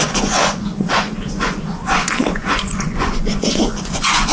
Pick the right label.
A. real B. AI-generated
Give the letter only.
B